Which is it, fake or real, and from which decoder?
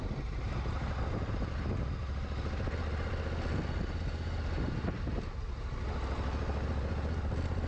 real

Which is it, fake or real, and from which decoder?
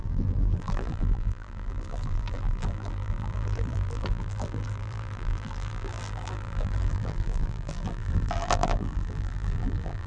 fake, vocoder, BigVGAN v2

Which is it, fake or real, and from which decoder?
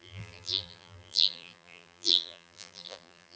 fake, vocoder, BigVGAN v2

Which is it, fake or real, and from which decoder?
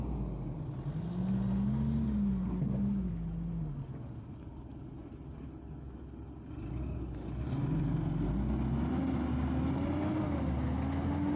real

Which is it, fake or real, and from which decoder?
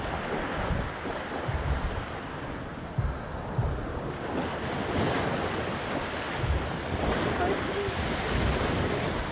real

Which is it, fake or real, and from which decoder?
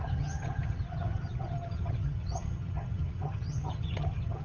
fake, vocoder, HiFi-GAN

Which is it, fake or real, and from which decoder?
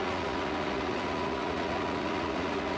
fake, vocoder, Vocos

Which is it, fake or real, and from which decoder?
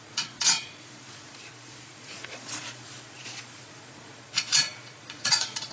fake, vocoder, Vocos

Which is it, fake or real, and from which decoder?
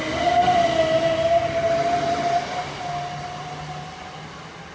real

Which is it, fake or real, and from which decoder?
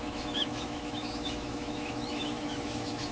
fake, autoencoder, DAC-VAE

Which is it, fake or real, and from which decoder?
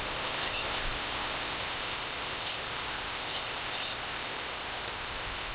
fake, codec, ZipCodec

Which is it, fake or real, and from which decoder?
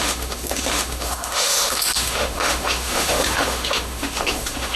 fake, autoencoder, DAC-VAE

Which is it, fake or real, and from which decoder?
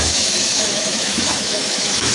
fake, autoencoder, DAC-VAE